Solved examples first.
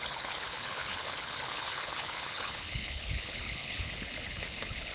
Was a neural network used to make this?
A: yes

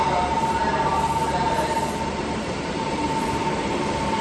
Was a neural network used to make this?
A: yes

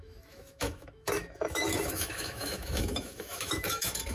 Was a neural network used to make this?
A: yes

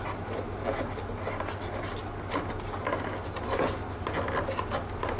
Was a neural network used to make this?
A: no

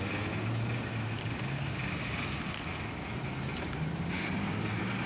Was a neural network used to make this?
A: no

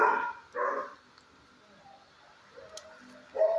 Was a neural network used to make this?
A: no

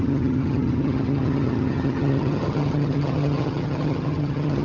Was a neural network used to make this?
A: yes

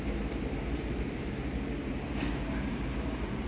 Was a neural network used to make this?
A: yes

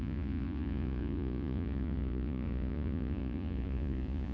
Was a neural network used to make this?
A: yes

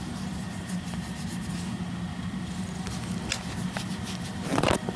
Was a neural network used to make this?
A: no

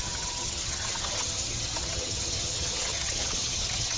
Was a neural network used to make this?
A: yes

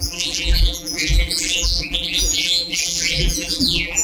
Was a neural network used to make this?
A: yes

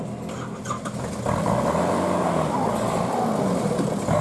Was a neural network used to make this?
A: no